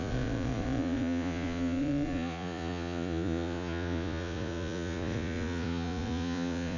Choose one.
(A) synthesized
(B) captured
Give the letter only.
A